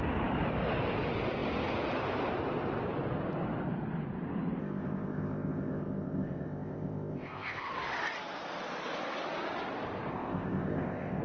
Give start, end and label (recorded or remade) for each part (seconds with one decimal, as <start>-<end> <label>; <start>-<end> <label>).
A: 0.0-4.6 recorded; 4.6-7.7 remade; 7.7-10.1 recorded; 10.1-11.2 remade